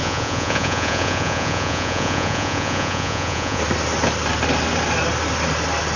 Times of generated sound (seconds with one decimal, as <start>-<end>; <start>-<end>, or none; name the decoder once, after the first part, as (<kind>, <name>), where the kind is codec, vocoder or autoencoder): 0.0-3.6 (vocoder, Vocos)